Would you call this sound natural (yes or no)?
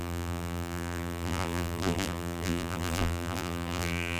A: no